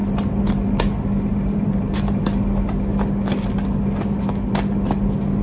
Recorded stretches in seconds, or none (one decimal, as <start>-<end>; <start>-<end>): 0.0-1.3; 1.8-5.4